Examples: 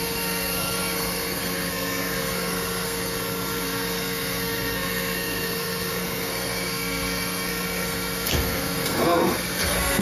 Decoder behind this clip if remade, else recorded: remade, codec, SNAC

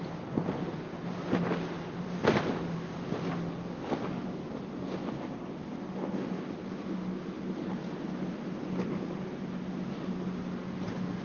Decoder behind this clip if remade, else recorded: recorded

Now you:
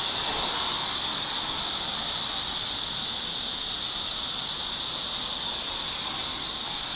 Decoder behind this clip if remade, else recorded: recorded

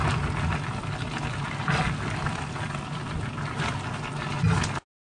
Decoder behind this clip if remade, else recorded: recorded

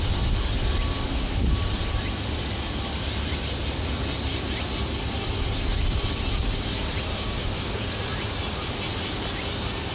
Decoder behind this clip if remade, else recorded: recorded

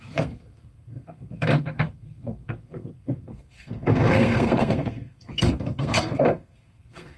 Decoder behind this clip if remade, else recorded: remade, codec, SNAC